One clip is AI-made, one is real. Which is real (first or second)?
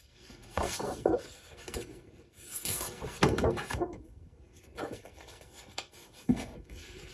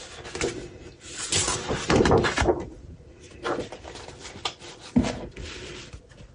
second